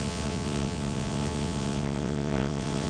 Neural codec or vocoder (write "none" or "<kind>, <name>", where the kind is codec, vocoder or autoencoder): vocoder, WaveNeXt